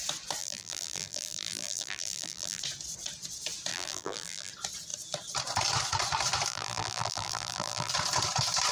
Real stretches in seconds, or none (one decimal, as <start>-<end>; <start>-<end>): 0.0-0.4; 2.6-3.7; 4.5-6.5; 7.9-8.7